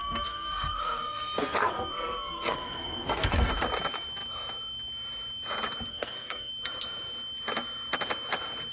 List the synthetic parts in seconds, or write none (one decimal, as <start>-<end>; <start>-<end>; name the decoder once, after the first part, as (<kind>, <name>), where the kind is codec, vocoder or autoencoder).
0.0-3.5 (codec, SNAC); 5.9-6.5